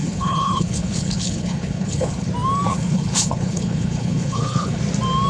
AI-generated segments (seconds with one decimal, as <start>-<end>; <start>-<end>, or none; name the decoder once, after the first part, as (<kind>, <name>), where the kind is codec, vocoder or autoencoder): 0.0-2.3 (codec, HILCodec); 2.7-4.8

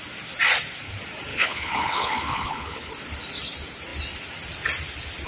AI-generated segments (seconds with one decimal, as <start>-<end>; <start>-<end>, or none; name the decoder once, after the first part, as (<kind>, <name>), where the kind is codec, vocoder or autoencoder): 1.3-2.9 (codec, HILCodec)

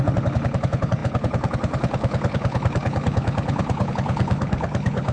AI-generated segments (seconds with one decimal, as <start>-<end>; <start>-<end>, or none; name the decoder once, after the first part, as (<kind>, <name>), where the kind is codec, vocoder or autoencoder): 0.0-5.1 (codec, HILCodec)

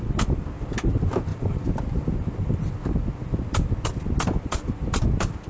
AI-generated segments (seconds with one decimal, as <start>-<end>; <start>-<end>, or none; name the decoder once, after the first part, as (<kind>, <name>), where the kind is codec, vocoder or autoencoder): none